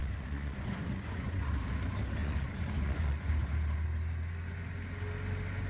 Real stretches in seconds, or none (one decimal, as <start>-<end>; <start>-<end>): 1.5-2.2; 3.3-5.7